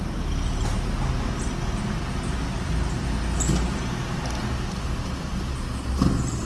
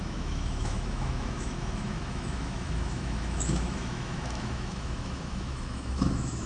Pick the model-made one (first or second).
second